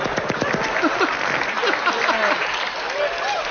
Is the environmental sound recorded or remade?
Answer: recorded